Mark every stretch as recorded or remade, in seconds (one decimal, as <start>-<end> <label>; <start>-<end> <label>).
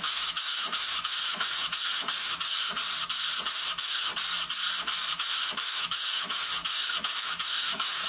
0.0-2.8 remade; 2.8-3.5 recorded; 3.5-4.1 remade; 4.1-5.1 recorded; 5.1-8.1 remade